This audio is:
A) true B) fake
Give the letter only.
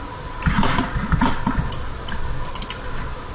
A